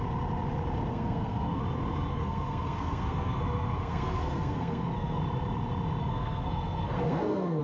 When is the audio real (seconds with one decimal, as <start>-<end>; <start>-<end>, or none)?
0.0-0.9; 1.6-2.1; 5.2-6.0